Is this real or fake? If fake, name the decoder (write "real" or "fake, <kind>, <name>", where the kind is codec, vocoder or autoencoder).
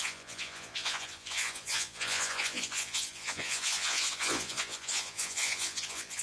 fake, vocoder, Vocos